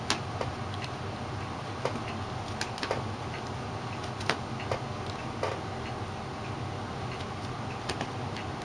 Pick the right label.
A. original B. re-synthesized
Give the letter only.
A